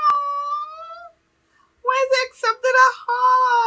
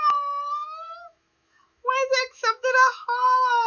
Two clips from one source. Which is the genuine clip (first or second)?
first